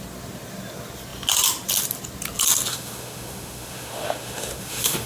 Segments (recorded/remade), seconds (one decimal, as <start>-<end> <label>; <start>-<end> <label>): 0.0-2.7 recorded; 2.7-5.1 remade